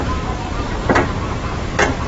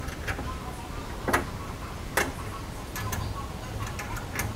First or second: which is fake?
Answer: first